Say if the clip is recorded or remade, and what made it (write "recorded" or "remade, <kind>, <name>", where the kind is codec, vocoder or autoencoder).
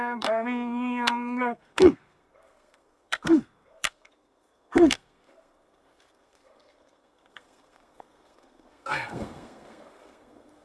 remade, codec, SNAC